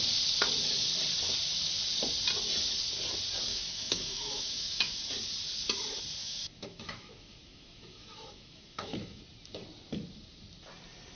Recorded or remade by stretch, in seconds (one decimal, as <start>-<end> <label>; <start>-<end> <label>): 0.0-3.5 recorded; 3.5-5.1 remade; 5.1-6.2 recorded; 6.2-9.2 remade; 9.2-11.2 recorded